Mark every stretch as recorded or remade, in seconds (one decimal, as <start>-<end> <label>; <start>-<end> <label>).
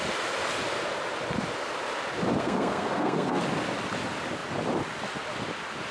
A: 0.0-2.4 recorded; 2.4-3.4 remade; 3.4-5.9 recorded